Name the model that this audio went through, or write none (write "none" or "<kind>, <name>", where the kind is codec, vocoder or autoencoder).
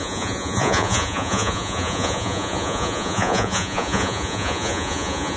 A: vocoder, Vocos